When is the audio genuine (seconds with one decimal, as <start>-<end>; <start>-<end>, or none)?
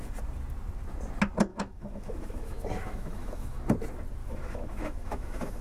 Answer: 0.0-1.5; 3.6-4.2